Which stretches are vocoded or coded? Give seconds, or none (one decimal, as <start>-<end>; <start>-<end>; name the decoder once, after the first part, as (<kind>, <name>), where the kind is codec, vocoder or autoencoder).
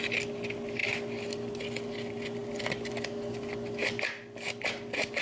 none